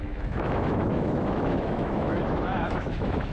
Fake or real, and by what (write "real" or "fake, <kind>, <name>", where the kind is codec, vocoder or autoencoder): fake, autoencoder, DAC-VAE